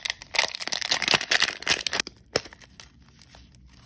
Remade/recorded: recorded